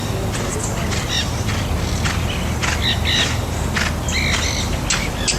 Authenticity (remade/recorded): recorded